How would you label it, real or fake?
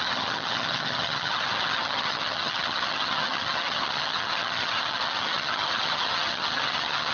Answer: fake